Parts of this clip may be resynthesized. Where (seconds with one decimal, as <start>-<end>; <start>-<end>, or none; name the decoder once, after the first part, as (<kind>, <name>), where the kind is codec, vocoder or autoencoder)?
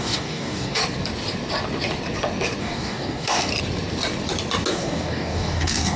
0.0-0.8 (codec, DAC); 2.6-3.5; 4.7-6.0